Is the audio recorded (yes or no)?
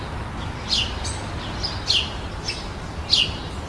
yes